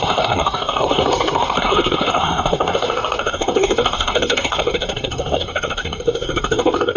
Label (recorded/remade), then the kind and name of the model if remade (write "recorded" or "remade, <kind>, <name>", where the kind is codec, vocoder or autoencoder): remade, codec, SNAC